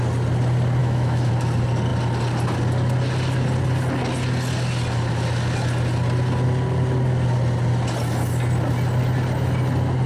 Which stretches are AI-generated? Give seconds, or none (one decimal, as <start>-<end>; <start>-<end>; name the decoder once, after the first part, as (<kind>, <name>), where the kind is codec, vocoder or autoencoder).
0.8-1.3 (autoencoder, DAC-VAE)